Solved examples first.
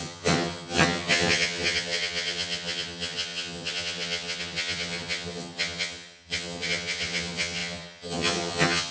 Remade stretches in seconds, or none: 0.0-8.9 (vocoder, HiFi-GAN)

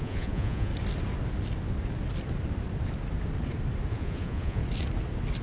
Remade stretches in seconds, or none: 0.0-0.7 (vocoder, Vocos); 3.9-4.6

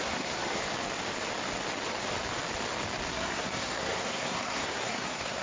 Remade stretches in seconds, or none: 0.0-0.6 (codec, SNAC); 3.1-5.4

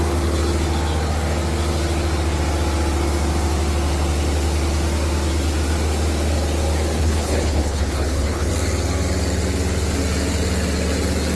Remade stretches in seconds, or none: 7.0-8.5 (codec, HILCodec)

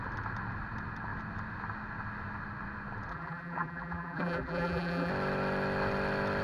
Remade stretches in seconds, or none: 3.1-5.1 (vocoder, BigVGAN v2)

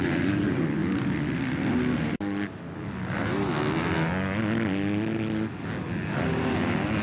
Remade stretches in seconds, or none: none